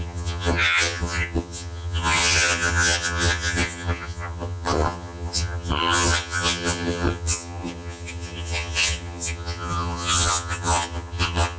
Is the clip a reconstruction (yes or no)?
yes